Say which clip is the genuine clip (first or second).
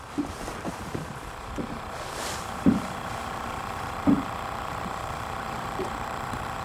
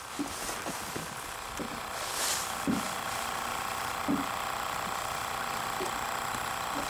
second